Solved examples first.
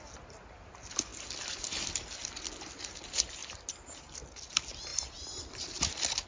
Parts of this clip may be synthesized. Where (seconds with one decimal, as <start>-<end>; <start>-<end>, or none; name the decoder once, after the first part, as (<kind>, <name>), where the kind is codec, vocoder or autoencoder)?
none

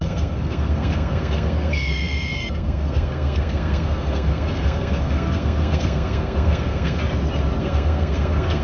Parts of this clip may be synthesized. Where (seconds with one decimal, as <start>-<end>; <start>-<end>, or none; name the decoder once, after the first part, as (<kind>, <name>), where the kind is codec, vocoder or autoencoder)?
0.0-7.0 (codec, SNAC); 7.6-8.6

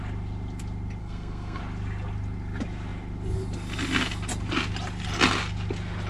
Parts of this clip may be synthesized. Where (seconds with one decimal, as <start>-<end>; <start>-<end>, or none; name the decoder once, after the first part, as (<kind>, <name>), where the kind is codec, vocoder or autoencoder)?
1.0-1.6 (codec, SNAC)

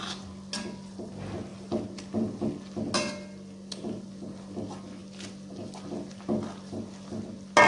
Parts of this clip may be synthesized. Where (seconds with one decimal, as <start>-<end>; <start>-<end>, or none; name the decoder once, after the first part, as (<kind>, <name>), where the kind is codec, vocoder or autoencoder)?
none

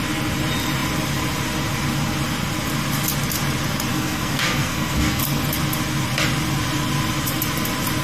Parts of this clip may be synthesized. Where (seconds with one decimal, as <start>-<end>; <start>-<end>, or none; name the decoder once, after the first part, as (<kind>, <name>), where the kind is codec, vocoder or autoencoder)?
3.9-5.2 (codec, SNAC)

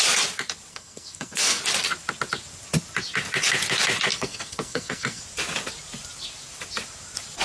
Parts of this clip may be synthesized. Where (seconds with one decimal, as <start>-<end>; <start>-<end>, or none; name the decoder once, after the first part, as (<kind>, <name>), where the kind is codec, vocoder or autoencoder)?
0.7-1.6 (codec, SNAC); 4.1-5.2

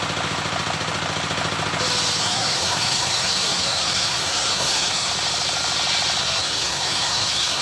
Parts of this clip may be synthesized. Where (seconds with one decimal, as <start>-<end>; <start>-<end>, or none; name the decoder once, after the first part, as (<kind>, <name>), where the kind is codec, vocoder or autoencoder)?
2.2-5.1 (codec, SNAC); 6.2-7.6

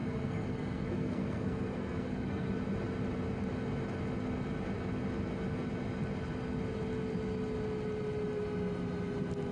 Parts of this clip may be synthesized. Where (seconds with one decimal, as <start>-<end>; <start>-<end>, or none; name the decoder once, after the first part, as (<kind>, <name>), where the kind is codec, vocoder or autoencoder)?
0.0-2.5 (codec, SNAC)